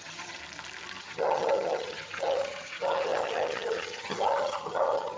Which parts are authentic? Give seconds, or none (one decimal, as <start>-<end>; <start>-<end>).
0.4-1.0